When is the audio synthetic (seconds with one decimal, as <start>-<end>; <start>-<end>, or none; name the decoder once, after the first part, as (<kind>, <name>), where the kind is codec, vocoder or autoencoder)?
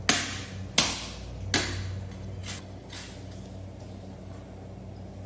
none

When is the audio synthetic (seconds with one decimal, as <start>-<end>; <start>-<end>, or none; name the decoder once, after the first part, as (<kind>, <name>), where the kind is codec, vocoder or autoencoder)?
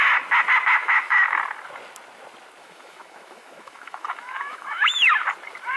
0.8-1.4 (autoencoder, DAC-VAE); 2.6-5.1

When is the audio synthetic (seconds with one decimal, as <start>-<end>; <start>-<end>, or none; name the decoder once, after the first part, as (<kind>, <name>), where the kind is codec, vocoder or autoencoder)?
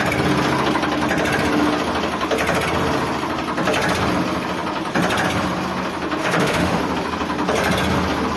6.2-6.8 (autoencoder, DAC-VAE)